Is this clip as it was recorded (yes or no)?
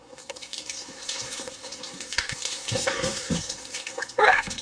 no